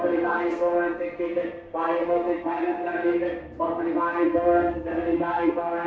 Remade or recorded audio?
remade